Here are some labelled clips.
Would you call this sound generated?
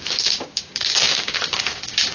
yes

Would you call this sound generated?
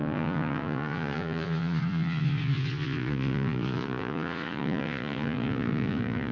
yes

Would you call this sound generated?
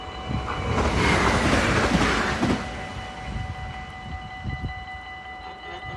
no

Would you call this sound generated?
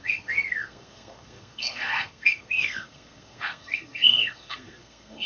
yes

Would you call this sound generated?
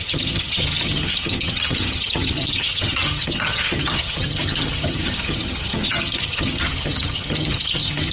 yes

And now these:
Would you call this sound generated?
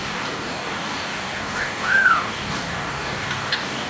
yes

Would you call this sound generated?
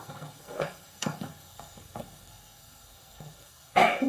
yes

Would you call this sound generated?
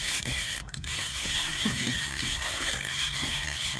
yes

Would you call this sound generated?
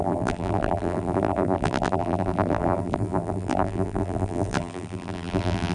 yes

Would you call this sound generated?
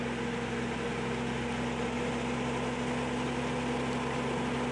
no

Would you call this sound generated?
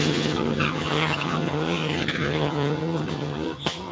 yes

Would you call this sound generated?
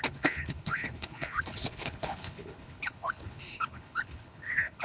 yes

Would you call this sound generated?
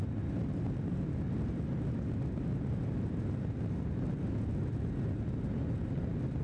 no